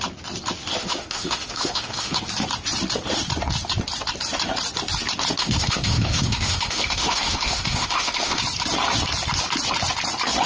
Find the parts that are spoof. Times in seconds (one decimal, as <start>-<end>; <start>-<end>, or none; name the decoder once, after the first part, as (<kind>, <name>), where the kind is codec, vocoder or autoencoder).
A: 0.8-2.2 (autoencoder, DAC-VAE); 5.4-8.4